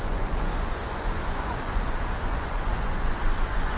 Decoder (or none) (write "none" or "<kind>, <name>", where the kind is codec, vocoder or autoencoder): vocoder, Vocos